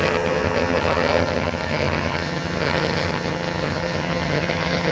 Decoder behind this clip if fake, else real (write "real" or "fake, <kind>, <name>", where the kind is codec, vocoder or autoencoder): fake, vocoder, HiFi-GAN